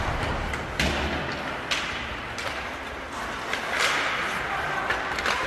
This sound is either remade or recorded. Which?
recorded